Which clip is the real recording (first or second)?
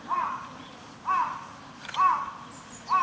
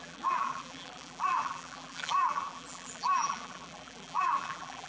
first